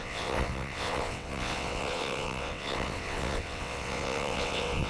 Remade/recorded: remade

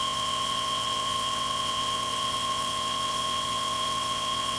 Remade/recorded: remade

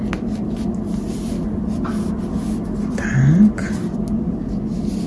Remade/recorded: recorded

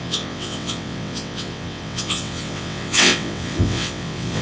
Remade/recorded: remade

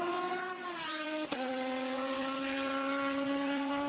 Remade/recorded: remade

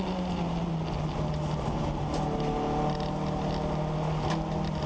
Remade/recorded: recorded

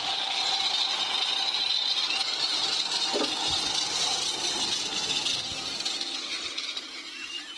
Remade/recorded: recorded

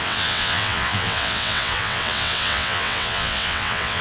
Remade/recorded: remade